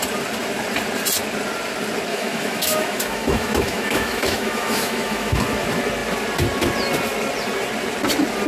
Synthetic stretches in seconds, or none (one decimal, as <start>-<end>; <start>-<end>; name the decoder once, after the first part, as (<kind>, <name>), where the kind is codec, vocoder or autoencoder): 2.1-5.4 (autoencoder, DAC-VAE)